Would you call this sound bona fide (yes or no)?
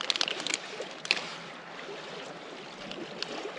yes